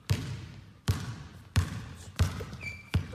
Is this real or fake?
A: real